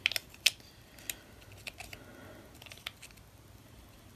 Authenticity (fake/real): real